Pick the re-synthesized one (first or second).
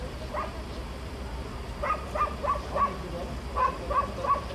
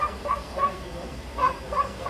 second